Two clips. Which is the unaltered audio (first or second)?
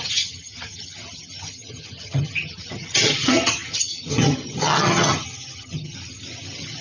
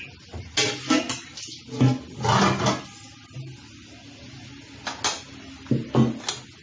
second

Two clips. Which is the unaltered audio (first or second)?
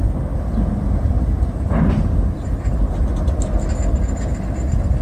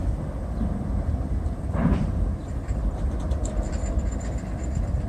first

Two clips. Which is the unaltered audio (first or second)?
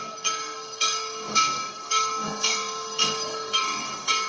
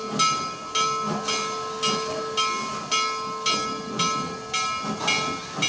second